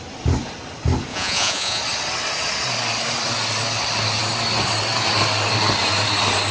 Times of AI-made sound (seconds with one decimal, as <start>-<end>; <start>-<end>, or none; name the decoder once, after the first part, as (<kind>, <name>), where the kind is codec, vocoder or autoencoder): 1.1-1.8 (vocoder, Vocos)